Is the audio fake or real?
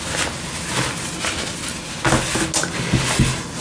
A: real